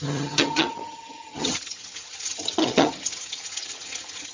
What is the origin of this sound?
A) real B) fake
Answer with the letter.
B